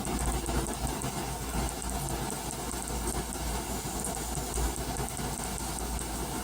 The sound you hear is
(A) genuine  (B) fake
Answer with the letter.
A